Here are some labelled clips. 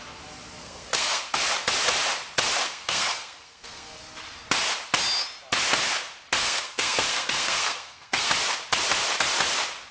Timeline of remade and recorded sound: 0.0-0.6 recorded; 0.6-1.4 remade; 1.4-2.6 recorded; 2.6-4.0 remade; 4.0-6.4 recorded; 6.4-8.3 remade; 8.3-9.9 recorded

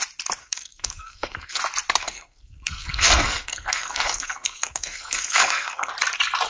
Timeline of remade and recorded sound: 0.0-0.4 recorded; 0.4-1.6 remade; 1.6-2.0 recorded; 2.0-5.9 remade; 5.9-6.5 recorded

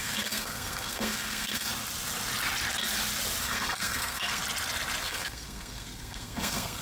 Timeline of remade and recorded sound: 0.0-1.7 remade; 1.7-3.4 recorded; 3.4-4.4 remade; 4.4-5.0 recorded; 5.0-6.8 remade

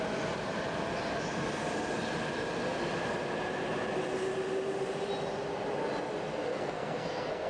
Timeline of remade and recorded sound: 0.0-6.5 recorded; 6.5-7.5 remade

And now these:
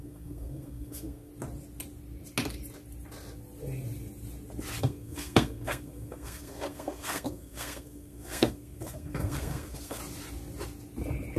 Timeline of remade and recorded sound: 0.0-1.3 remade; 1.3-4.8 recorded; 4.8-10.0 remade; 10.0-11.4 recorded